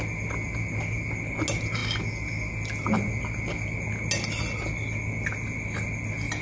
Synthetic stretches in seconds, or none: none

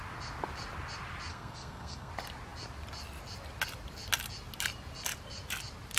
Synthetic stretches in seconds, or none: 1.3-2.1 (codec, SNAC)

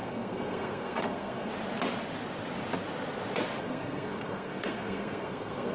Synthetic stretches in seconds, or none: 0.0-1.5 (codec, SNAC); 3.6-5.7

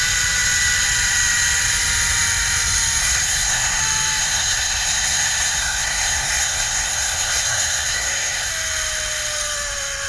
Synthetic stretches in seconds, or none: 3.0-3.8 (codec, SNAC); 4.2-8.5

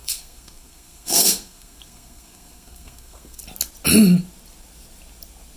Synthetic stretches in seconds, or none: 0.0-3.4 (codec, SNAC)

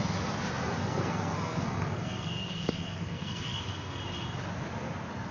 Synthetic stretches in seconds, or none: 0.8-4.0 (codec, SNAC)